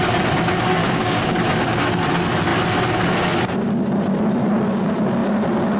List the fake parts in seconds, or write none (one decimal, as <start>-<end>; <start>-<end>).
0.8-1.8